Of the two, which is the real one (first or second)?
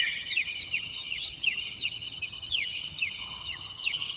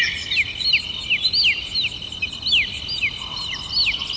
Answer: second